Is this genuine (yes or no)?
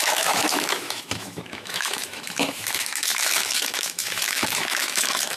no